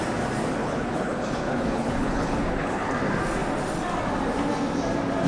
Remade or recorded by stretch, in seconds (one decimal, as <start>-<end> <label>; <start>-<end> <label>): 0.0-0.6 recorded; 0.6-2.9 remade; 2.9-5.3 recorded